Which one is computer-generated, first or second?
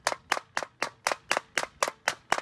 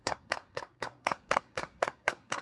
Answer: second